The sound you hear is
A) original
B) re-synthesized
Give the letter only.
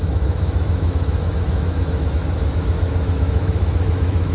B